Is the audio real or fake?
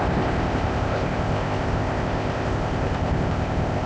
fake